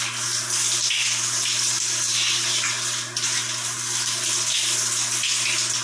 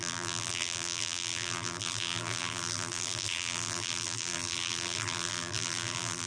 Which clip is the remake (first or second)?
second